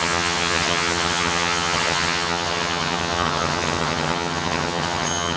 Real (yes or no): no